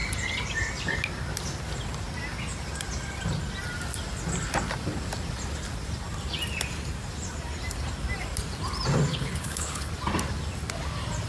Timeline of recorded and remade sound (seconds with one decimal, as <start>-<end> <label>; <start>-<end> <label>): 0.0-9.1 recorded; 9.1-9.9 remade; 9.9-11.3 recorded